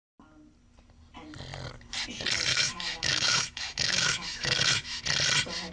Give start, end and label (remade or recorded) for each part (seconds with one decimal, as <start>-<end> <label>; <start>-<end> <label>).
0.0-2.5 recorded; 2.5-5.0 remade; 5.0-5.7 recorded